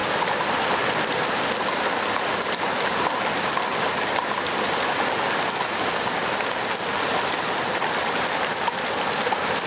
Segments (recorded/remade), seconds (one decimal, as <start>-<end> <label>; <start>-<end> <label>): 0.0-9.7 recorded